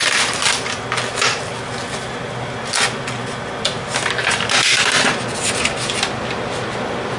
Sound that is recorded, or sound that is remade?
recorded